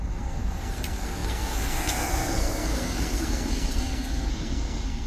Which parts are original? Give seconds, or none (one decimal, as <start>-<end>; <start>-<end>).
none